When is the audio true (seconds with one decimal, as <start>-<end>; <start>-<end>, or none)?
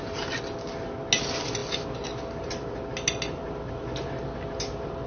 0.0-5.1